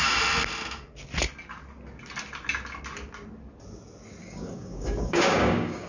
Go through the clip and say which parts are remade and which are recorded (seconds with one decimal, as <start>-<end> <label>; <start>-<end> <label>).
0.0-4.2 recorded; 4.2-5.9 remade